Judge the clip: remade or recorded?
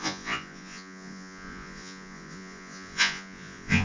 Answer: remade